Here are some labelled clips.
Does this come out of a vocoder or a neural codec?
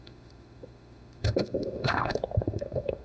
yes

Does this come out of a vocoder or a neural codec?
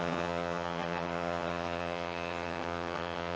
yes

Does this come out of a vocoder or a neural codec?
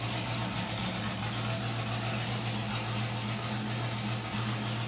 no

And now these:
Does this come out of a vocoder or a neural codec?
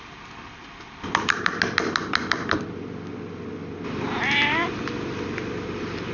yes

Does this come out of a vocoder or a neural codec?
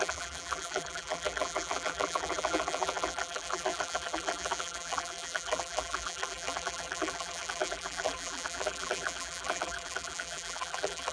yes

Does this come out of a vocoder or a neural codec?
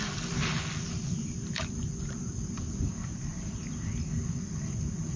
yes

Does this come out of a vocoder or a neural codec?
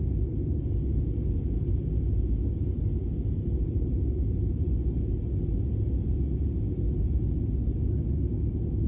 no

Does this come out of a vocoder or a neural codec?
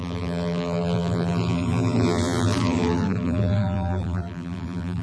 yes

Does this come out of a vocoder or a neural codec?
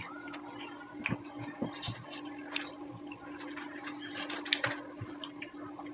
no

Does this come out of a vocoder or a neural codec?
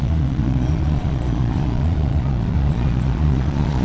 yes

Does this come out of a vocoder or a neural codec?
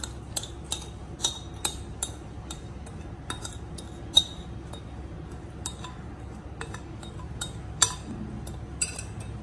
no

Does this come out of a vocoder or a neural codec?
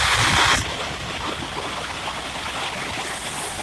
no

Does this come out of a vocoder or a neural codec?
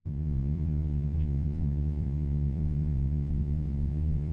yes